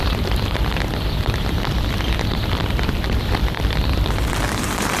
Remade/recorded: remade